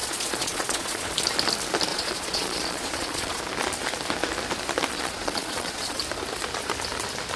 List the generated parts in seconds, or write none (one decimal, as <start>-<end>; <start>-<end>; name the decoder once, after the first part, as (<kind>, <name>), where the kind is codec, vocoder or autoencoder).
0.0-1.1 (vocoder, Vocos); 1.9-3.4; 4.9-6.0